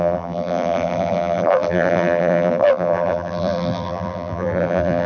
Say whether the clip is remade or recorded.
remade